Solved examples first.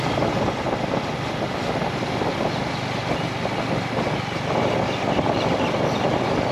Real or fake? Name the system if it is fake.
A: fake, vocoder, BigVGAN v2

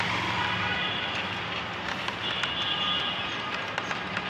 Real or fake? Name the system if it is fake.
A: real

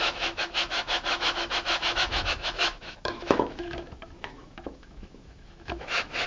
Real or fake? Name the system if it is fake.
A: fake, autoencoder, DAC-VAE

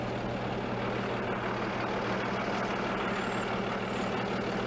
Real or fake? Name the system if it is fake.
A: real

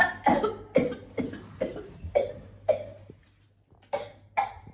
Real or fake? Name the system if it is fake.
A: real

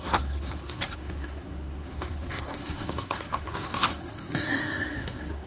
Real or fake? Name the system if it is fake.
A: fake, codec, SNAC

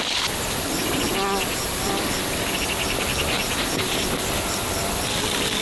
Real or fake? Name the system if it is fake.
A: real